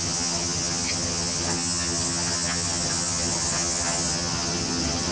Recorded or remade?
remade